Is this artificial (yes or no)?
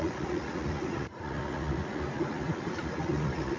yes